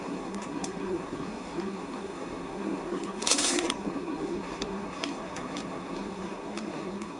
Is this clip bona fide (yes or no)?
no